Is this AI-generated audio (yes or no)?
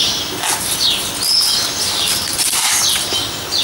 no